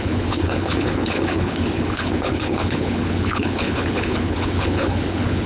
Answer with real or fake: fake